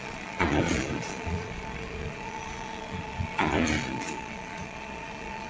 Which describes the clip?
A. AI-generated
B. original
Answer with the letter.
A